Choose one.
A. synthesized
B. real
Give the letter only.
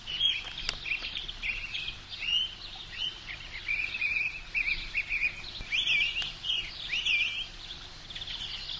B